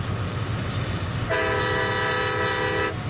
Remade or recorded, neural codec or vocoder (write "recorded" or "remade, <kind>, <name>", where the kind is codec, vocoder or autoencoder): recorded